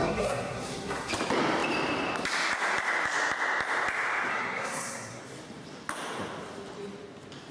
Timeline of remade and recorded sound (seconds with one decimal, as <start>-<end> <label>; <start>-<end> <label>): 0.0-1.1 remade; 1.1-4.3 recorded; 4.3-5.2 remade; 5.2-7.5 recorded